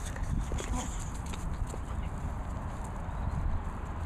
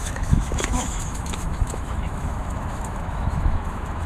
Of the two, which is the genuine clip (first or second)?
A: first